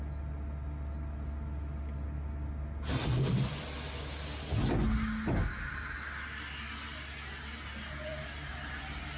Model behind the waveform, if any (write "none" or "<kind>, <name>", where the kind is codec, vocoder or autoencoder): none